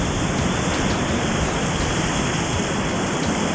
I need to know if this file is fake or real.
real